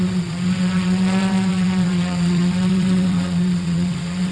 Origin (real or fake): fake